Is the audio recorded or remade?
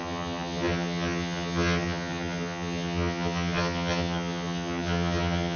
remade